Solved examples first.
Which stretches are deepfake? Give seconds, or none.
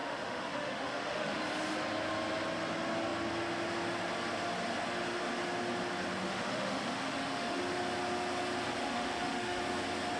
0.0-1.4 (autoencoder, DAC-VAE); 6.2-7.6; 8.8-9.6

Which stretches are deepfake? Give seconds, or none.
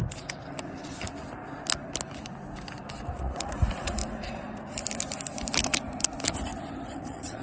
3.2-4.0 (vocoder, Vocos); 7.0-7.4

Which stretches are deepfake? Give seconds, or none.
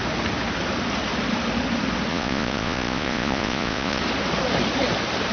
2.1-4.0 (vocoder, Vocos)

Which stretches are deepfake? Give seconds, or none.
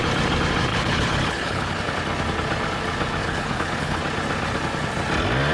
0.7-1.8 (codec, HILCodec); 3.2-4.0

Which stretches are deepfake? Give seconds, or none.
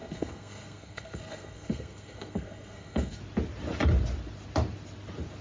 0.0-3.2 (codec, SNAC)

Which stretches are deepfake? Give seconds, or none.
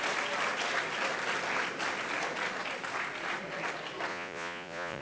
4.1-5.0 (vocoder, Vocos)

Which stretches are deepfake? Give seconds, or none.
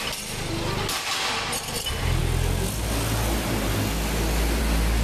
none